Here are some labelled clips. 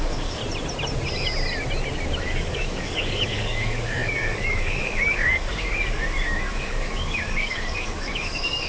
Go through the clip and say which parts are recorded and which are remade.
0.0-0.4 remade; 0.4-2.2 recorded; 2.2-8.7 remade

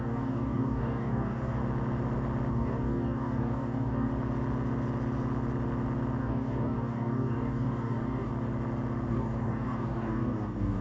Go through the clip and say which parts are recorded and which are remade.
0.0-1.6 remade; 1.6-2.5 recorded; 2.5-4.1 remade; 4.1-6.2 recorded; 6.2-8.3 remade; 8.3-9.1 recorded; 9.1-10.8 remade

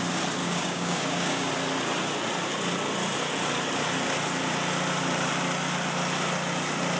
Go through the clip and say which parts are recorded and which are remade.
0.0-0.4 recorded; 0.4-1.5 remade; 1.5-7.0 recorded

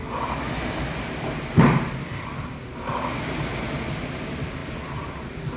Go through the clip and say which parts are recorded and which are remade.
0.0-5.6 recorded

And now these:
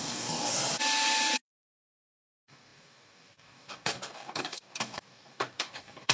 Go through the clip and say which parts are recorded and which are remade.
0.0-0.5 remade; 0.5-1.6 recorded; 1.6-6.1 remade

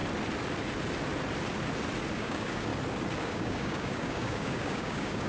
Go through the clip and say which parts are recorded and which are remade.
0.0-2.1 recorded; 2.1-2.7 remade; 2.7-3.2 recorded; 3.2-5.3 remade

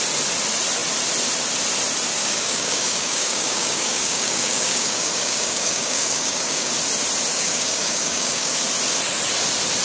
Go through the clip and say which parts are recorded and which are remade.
0.0-2.2 recorded; 2.2-6.7 remade; 6.7-7.3 recorded; 7.3-8.6 remade; 8.6-9.8 recorded